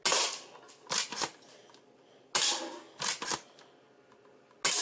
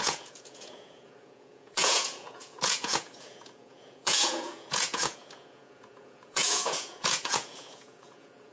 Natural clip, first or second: first